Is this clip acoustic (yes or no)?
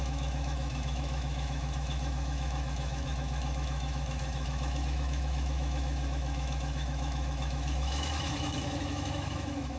no